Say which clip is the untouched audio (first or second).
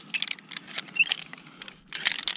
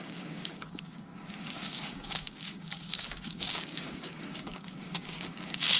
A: first